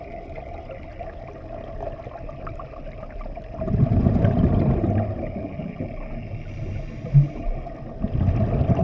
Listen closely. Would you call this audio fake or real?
real